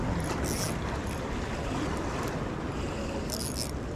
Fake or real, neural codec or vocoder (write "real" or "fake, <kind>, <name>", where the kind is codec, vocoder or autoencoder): real